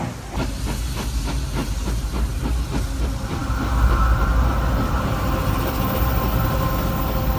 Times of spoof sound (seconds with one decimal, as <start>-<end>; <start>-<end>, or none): 1.6-2.1

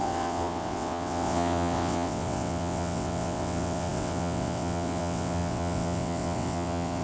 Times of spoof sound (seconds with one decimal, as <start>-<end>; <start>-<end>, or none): 0.0-7.0

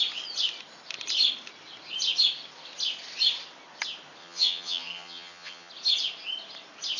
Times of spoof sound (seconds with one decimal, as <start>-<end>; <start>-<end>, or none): 4.2-5.7

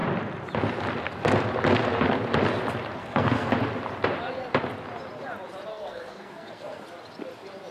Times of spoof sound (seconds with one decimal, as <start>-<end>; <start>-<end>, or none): 3.0-3.5; 5.7-6.8

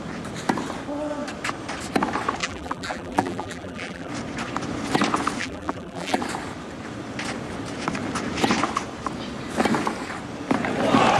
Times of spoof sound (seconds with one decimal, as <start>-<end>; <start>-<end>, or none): 2.4-4.1; 5.4-6.2

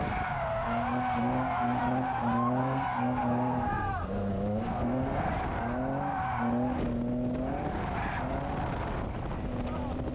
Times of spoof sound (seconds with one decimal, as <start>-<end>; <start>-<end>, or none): 1.2-1.8; 2.6-4.3; 4.7-5.3